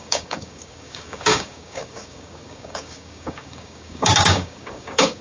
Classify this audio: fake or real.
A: fake